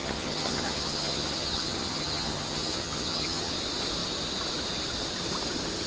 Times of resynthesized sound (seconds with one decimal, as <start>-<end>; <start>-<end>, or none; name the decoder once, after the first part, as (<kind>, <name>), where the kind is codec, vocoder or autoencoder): 0.0-3.5 (vocoder, HiFi-GAN)